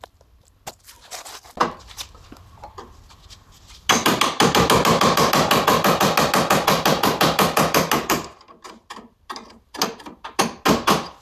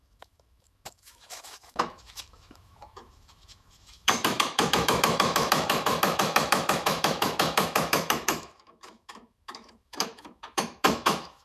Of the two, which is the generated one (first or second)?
second